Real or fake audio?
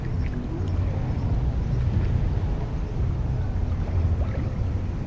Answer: real